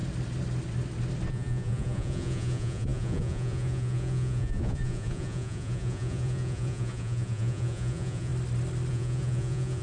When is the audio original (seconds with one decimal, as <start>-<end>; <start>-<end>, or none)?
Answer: 0.0-1.3; 8.3-8.9